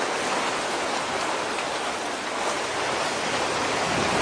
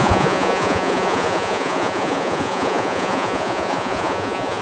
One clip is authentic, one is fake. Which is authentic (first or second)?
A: first